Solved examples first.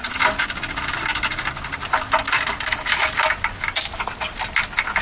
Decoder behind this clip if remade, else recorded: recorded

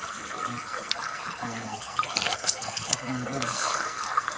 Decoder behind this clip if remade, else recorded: remade, codec, SNAC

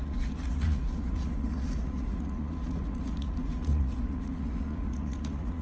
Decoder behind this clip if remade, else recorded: remade, vocoder, Vocos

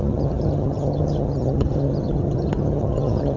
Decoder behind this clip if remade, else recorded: remade, vocoder, HiFi-GAN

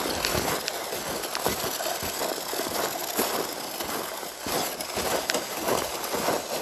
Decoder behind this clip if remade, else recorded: recorded